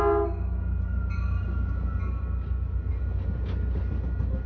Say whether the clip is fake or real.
real